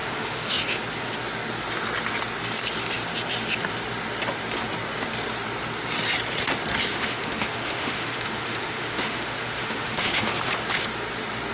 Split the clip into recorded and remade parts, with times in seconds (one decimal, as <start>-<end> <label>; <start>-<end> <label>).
0.0-0.6 remade; 0.6-6.9 recorded; 6.9-10.5 remade; 10.5-11.5 recorded